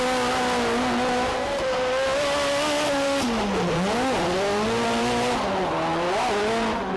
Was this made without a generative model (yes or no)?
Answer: yes